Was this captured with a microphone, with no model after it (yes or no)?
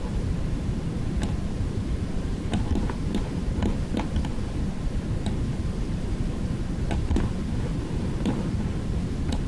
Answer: yes